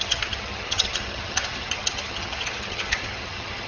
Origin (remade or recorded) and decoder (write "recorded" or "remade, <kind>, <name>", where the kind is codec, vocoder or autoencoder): remade, vocoder, HiFi-GAN